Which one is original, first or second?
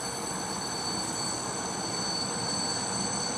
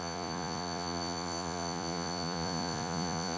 first